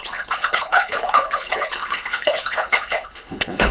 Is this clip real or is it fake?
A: fake